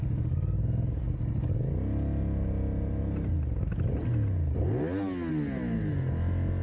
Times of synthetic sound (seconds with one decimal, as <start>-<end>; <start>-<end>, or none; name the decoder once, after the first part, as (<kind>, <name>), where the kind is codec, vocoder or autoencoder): 0.0-1.0 (codec, DAC)